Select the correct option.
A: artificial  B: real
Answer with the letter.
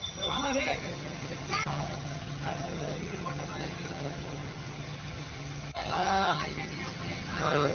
A